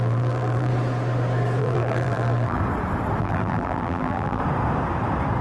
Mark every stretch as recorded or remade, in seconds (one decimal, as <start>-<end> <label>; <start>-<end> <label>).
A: 0.0-0.7 remade; 0.7-1.6 recorded; 1.6-2.6 remade; 2.6-3.2 recorded; 3.2-4.4 remade; 4.4-5.4 recorded